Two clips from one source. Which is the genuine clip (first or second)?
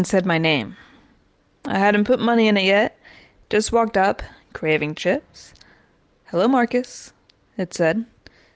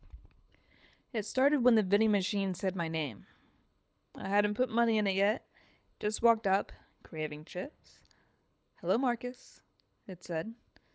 first